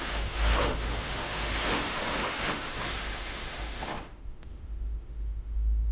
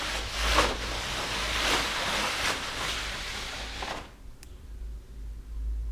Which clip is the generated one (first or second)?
first